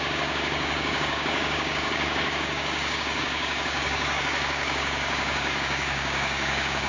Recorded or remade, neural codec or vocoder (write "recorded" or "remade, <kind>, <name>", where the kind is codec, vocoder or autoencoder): remade, codec, DAC